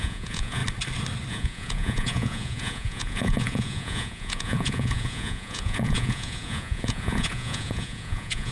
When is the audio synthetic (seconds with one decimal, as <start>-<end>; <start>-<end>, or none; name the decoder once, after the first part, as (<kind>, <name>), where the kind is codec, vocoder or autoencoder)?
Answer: 0.0-0.6 (vocoder, Vocos); 1.3-8.5